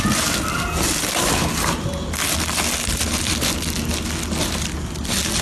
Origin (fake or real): real